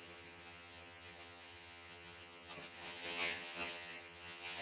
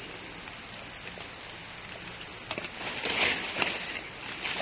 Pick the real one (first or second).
second